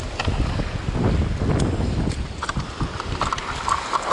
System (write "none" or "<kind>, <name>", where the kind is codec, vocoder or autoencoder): none